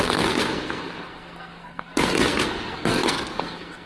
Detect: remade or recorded remade